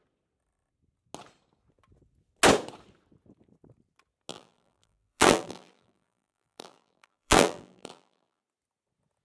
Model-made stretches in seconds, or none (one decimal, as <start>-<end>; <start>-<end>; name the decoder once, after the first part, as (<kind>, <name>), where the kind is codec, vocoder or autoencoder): 4.3-8.4 (vocoder, BigVGAN v2)